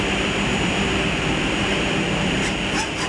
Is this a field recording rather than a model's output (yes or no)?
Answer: no